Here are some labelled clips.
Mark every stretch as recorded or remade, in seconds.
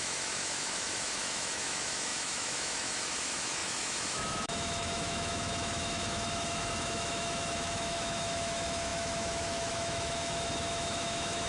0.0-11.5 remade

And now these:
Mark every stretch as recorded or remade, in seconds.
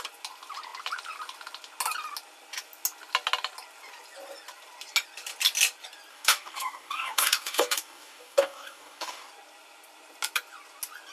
0.0-6.1 recorded; 6.1-9.3 remade; 9.3-11.1 recorded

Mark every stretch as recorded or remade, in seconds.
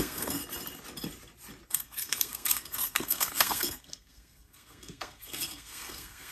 0.0-0.4 remade; 0.4-1.7 recorded; 1.7-6.3 remade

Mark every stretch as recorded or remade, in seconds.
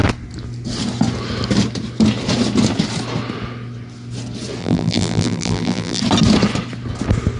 0.0-4.6 recorded; 4.6-6.0 remade; 6.0-7.4 recorded